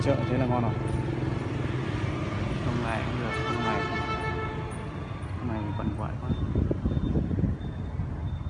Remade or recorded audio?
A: recorded